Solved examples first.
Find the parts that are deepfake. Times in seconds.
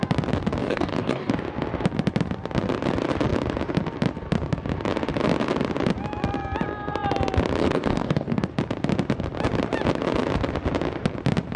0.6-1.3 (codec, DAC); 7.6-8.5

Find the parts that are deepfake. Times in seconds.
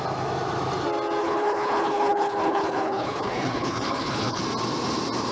1.2-4.4 (codec, HILCodec)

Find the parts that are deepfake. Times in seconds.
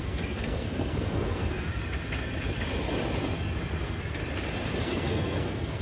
0.0-1.7 (codec, SNAC); 3.8-4.2; 4.8-5.8